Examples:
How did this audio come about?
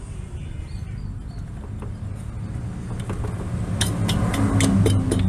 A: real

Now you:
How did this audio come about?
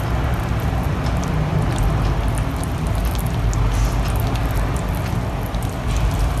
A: real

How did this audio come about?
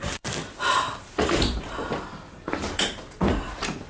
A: real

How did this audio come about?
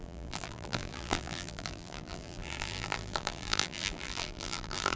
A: fake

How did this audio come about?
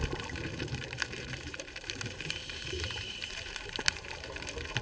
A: fake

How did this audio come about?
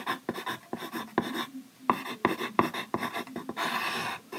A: real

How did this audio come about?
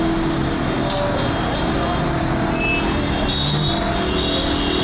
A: real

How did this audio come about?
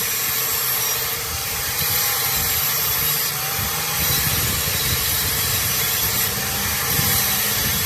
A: fake